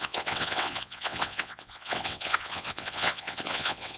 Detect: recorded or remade remade